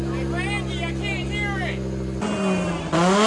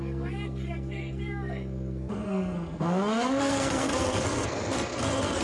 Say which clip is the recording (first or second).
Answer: first